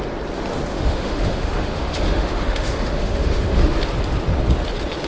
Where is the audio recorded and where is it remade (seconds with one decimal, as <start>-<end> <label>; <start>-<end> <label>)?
0.0-0.7 recorded; 0.7-3.8 remade; 3.8-5.1 recorded